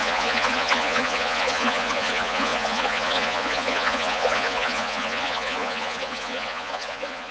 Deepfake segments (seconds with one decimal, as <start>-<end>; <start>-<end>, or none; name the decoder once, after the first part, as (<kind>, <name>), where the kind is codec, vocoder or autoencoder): 0.0-7.3 (vocoder, Vocos)